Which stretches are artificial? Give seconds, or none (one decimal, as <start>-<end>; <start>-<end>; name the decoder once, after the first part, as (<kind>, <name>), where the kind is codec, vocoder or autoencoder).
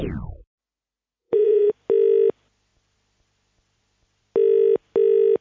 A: 1.2-1.7 (vocoder, Vocos)